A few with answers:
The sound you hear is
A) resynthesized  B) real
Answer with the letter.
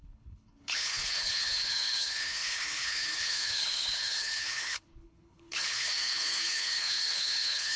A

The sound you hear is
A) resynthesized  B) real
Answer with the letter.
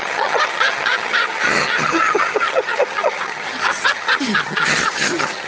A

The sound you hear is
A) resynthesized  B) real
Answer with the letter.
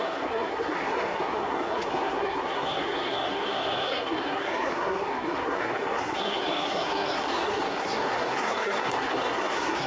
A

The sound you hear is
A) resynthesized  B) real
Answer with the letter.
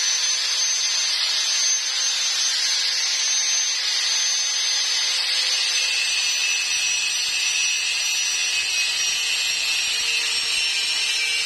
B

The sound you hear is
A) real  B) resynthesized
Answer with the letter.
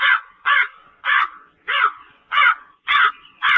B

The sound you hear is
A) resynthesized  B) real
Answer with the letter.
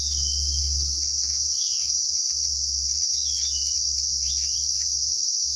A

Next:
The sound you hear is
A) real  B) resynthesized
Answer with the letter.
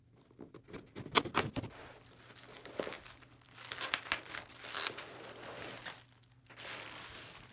A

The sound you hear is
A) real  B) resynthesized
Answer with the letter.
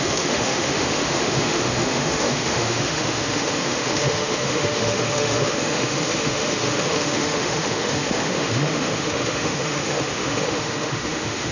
B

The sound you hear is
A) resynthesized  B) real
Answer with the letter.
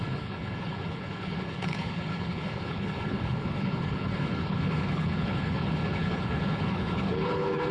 A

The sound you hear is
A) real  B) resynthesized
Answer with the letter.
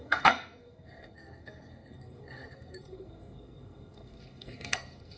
B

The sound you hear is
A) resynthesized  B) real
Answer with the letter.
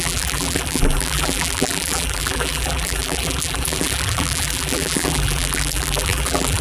A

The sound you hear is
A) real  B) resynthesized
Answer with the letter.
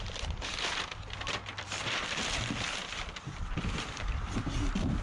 B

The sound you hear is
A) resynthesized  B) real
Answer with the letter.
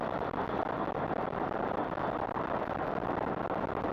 B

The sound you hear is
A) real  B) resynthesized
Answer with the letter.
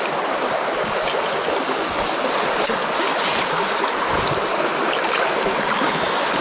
A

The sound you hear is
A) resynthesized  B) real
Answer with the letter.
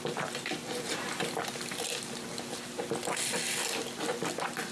B